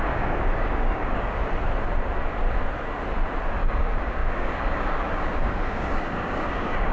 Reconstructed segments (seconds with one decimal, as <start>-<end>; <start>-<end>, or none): 0.0-1.4; 3.6-6.9